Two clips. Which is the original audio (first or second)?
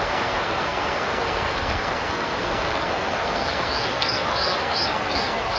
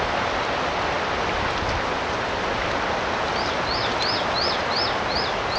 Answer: second